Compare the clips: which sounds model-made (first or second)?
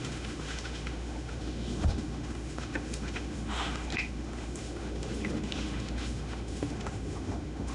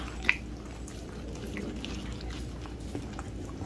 first